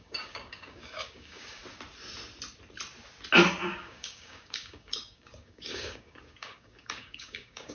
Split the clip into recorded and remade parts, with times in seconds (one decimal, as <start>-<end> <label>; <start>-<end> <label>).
0.0-1.6 remade; 1.6-3.6 recorded; 3.6-7.7 remade

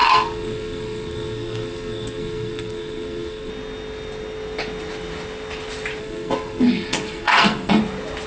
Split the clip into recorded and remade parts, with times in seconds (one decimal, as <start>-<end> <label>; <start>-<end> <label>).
0.0-3.5 remade; 3.5-6.0 recorded; 6.0-7.8 remade; 7.8-8.3 recorded

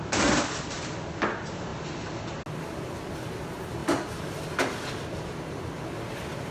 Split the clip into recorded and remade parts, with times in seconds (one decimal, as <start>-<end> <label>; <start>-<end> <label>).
0.0-3.8 recorded; 3.8-5.7 remade; 5.7-6.5 recorded

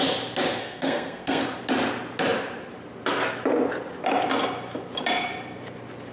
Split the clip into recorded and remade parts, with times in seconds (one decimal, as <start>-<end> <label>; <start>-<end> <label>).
0.0-0.6 recorded; 0.6-1.4 remade; 1.4-6.1 recorded

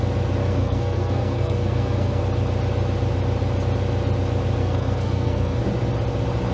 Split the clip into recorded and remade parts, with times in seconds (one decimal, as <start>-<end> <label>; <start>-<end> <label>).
0.0-0.4 recorded; 0.4-2.2 remade; 2.2-4.6 recorded; 4.6-5.6 remade; 5.6-6.5 recorded